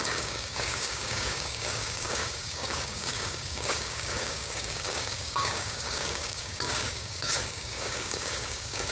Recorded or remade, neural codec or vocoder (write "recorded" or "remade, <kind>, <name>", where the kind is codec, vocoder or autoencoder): remade, codec, DAC